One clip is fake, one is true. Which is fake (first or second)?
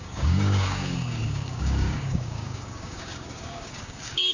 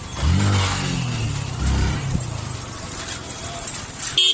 first